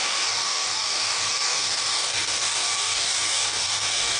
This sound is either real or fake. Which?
fake